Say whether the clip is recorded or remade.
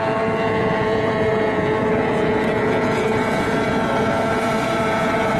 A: remade